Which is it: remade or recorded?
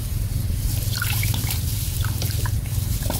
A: remade